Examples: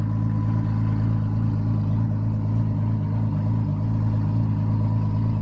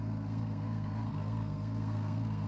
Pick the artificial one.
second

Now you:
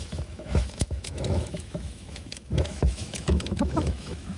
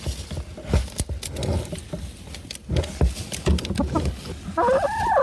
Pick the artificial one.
first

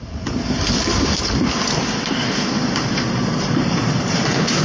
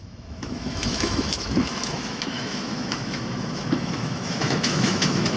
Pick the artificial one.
second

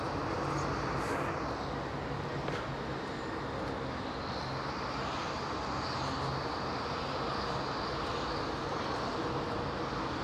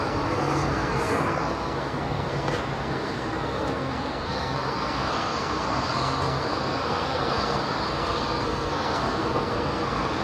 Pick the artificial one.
second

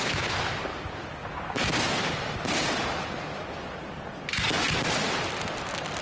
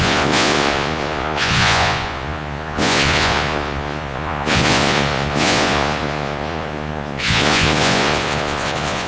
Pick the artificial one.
second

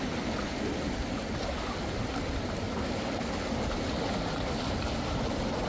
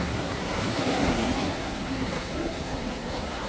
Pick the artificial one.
second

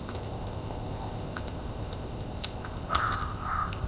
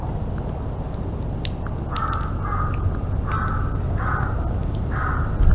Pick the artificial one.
first